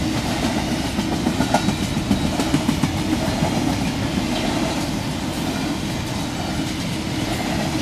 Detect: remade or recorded recorded